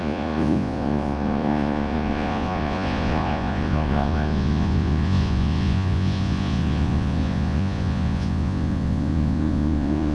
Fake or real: fake